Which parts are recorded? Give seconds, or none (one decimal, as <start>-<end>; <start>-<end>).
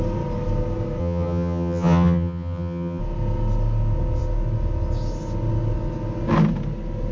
0.0-1.0; 3.0-7.1